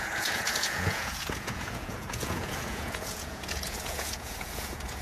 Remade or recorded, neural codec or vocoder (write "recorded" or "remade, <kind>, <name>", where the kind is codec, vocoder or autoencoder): remade, vocoder, Vocos